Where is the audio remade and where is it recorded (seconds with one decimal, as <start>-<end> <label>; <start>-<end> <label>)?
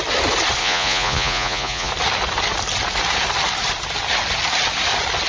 0.0-0.6 recorded; 0.6-1.9 remade; 1.9-5.3 recorded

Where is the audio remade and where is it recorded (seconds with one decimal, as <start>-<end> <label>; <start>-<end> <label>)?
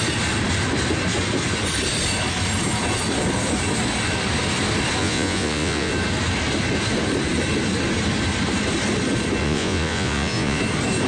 0.0-5.0 recorded; 5.0-5.9 remade; 5.9-9.4 recorded; 9.4-10.6 remade; 10.6-11.1 recorded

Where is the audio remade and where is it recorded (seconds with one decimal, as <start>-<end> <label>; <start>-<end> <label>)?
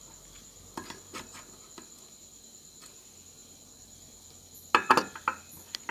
0.0-5.9 recorded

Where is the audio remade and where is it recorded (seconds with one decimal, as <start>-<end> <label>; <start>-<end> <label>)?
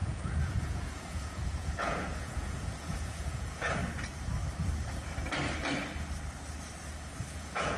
0.0-3.8 remade; 3.8-7.3 recorded; 7.3-7.8 remade